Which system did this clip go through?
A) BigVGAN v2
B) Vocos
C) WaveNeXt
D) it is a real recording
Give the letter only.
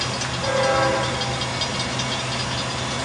D